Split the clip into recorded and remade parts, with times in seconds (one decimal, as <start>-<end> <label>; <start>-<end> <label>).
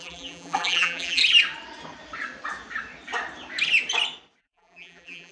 0.0-1.2 remade; 1.2-4.4 recorded; 4.4-5.3 remade